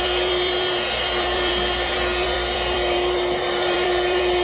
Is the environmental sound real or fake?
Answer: fake